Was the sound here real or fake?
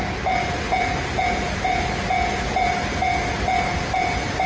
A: real